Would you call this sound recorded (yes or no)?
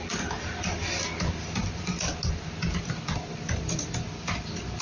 yes